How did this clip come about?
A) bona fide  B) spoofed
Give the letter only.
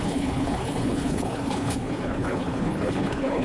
B